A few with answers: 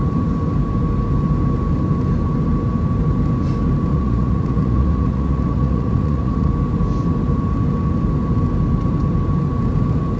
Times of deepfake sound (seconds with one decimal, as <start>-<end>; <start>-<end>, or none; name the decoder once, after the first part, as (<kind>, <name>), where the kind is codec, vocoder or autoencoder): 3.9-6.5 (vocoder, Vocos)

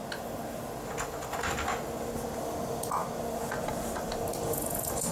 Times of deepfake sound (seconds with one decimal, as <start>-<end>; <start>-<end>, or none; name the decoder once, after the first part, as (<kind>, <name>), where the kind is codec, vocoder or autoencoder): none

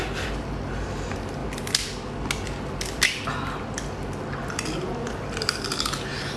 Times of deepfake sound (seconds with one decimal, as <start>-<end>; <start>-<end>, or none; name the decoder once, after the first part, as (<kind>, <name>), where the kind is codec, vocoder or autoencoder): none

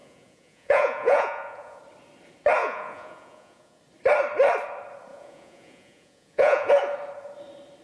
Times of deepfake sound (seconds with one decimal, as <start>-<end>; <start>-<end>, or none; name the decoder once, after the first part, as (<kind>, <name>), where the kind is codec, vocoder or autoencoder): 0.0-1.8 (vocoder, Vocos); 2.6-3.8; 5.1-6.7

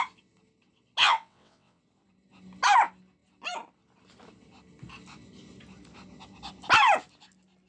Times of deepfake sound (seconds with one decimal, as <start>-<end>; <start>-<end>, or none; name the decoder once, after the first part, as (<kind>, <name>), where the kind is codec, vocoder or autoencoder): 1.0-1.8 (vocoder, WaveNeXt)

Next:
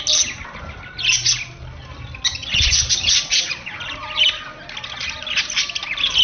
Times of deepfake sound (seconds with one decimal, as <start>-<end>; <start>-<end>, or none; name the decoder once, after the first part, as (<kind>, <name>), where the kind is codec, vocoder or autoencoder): 2.4-3.8 (vocoder, Vocos)

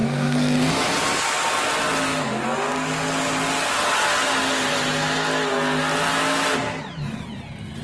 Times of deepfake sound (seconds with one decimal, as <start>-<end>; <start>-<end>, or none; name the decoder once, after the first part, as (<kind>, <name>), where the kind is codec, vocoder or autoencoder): 0.0-0.7 (codec, SNAC)

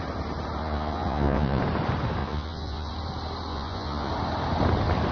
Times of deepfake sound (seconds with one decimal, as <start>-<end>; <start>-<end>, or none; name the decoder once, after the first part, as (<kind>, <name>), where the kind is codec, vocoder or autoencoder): 0.6-1.6 (vocoder, Vocos); 2.2-2.9; 3.5-4.1